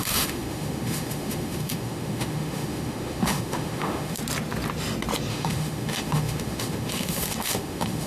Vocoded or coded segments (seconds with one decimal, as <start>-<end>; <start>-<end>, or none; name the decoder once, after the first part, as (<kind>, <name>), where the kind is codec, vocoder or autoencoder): 0.0-4.2 (autoencoder, DAC-VAE); 5.3-8.1